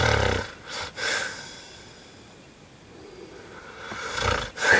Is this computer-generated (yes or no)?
no